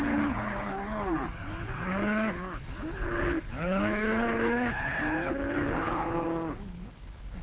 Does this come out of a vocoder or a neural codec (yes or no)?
yes